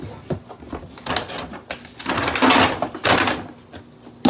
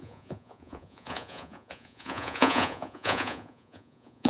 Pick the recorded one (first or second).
first